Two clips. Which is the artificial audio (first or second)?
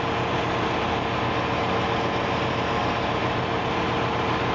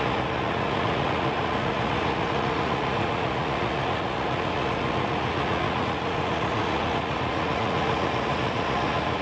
second